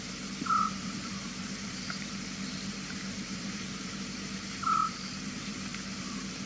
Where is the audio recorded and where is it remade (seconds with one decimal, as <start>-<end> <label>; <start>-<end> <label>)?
0.0-6.5 remade